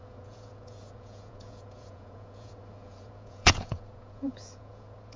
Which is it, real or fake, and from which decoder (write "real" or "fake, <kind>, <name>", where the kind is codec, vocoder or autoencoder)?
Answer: fake, vocoder, Vocos